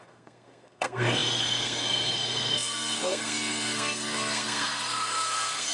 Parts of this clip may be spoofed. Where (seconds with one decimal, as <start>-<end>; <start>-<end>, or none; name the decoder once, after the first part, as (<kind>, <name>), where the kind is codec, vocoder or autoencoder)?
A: 0.0-5.7 (codec, SNAC)